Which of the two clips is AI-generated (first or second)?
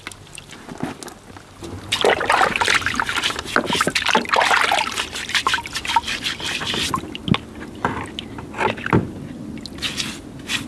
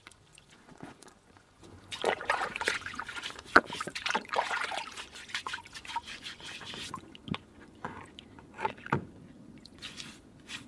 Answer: second